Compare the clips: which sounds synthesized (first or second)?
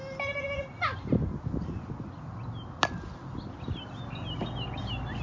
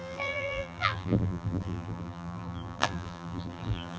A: second